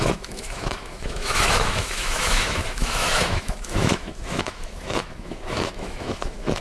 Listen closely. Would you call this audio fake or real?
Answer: fake